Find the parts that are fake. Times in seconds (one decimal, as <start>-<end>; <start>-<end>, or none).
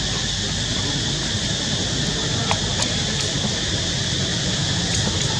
4.3-5.0